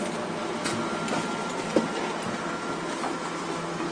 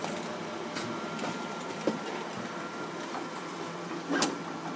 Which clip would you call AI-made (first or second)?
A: second